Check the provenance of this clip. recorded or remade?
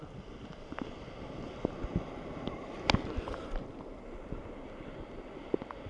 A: recorded